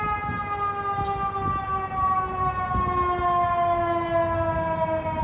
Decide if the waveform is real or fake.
real